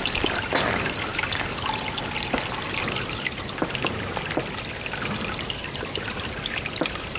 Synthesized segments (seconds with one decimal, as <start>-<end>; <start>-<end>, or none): 5.6-7.2